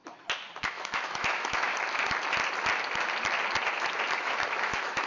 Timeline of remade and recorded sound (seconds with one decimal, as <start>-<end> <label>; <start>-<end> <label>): 0.0-0.6 recorded; 0.6-1.7 remade; 1.7-4.1 recorded; 4.1-5.1 remade